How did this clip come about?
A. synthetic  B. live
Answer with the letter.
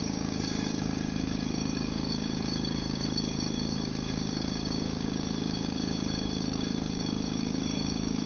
A